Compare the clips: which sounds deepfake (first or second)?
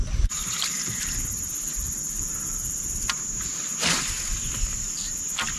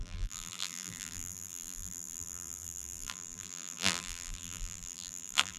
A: second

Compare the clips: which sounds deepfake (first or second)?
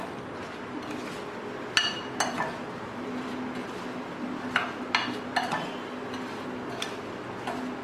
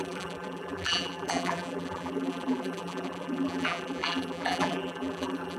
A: second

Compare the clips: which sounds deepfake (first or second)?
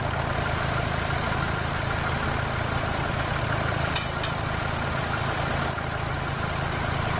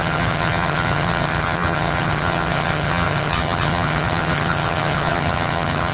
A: second